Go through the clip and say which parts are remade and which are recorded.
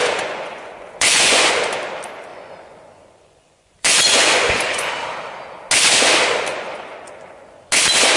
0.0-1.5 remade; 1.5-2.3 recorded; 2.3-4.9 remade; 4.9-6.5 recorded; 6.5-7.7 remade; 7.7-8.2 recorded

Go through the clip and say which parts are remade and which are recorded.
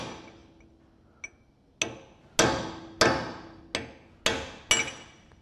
0.0-5.4 recorded